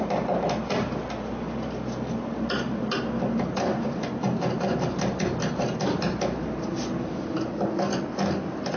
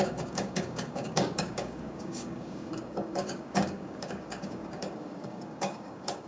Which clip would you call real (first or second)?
first